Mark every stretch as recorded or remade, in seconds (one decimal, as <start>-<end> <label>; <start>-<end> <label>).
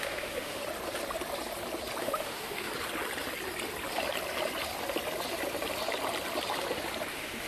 0.0-0.6 remade; 0.6-2.0 recorded; 2.0-2.7 remade; 2.7-7.1 recorded; 7.1-7.5 remade